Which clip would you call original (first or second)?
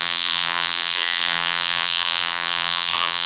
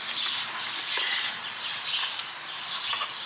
second